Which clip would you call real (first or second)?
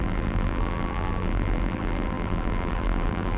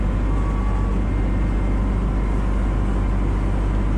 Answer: second